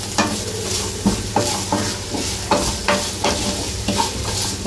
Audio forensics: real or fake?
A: real